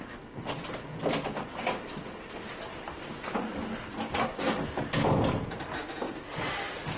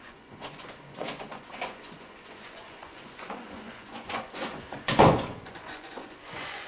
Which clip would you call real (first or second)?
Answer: first